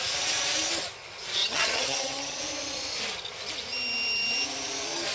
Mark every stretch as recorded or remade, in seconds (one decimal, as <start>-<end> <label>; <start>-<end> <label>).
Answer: 0.0-1.4 recorded; 1.4-2.4 remade; 2.4-5.1 recorded